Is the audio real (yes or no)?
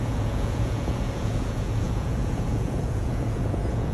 no